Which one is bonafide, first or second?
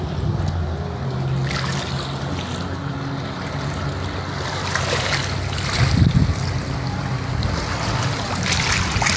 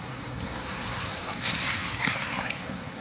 first